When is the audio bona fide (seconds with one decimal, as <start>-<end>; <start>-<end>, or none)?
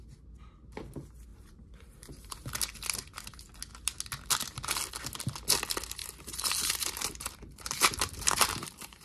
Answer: 0.0-1.3; 2.6-6.0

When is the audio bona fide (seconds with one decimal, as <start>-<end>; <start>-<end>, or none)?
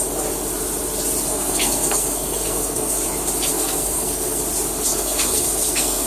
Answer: 0.0-1.3; 3.0-3.5; 4.4-4.9